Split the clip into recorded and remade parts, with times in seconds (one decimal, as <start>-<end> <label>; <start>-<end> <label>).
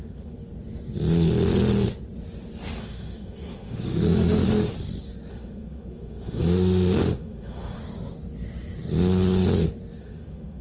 0.0-0.4 remade; 0.4-2.8 recorded; 2.8-4.7 remade; 4.7-5.3 recorded; 5.3-7.8 remade; 7.8-10.0 recorded; 10.0-10.6 remade